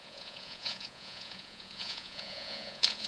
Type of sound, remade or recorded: remade